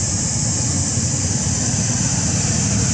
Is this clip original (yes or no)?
yes